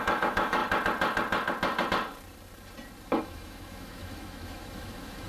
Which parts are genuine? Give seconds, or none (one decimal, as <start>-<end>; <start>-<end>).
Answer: 0.6-3.2